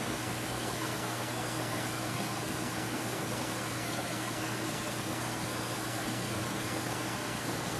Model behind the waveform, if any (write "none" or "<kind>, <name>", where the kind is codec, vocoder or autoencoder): codec, SNAC